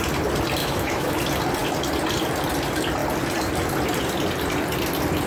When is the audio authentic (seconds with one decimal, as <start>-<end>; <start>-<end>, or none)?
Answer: 0.0-0.6; 1.2-5.3